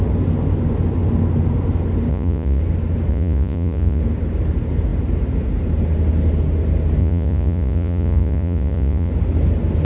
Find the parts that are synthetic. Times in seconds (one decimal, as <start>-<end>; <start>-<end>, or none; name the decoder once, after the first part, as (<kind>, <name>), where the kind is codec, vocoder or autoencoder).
2.1-2.6 (vocoder, Vocos); 3.1-4.0; 7.0-9.1

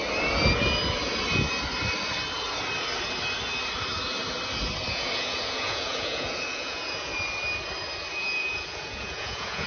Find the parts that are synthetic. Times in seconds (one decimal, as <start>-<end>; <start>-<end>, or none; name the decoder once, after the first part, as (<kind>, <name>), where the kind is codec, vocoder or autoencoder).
4.9-7.1 (vocoder, Vocos); 8.1-9.7